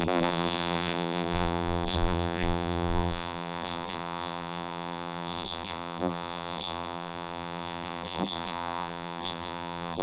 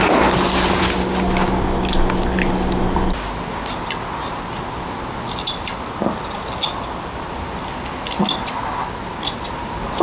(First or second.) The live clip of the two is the second